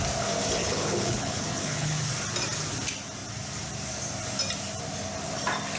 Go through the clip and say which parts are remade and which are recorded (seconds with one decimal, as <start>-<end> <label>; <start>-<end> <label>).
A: 0.0-0.6 recorded; 0.6-2.1 remade; 2.1-5.8 recorded